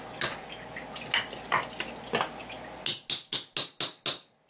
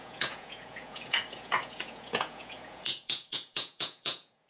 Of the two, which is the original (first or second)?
first